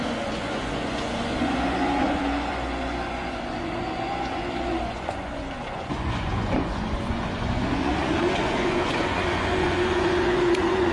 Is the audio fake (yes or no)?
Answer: yes